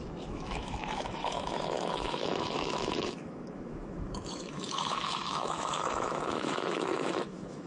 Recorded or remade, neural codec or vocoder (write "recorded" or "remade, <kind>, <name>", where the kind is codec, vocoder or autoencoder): remade, autoencoder, DAC-VAE